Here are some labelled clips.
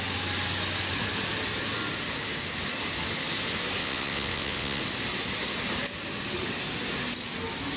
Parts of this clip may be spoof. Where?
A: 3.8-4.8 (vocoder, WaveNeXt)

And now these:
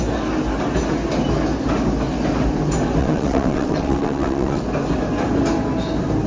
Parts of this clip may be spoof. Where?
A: 3.0-4.6 (vocoder, WaveNeXt)

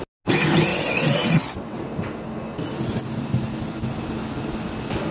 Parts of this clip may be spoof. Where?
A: 0.7-1.8 (vocoder, WaveNeXt)

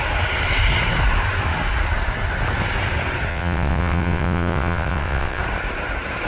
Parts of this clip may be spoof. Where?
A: 3.3-5.4 (vocoder, WaveNeXt)